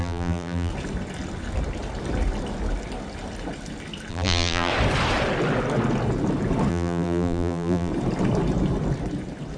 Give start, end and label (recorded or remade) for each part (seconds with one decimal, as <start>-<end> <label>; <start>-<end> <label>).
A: 0.0-0.7 remade; 0.7-4.1 recorded; 4.1-4.7 remade; 4.7-6.7 recorded; 6.7-7.9 remade; 7.9-9.6 recorded

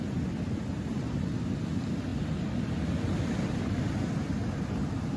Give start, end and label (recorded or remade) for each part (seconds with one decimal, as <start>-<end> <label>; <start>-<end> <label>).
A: 0.0-5.2 recorded

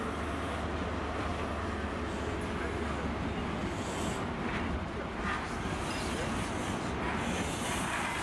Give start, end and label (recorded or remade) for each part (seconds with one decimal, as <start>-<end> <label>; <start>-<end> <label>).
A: 0.0-8.2 recorded